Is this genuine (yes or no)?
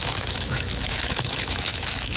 no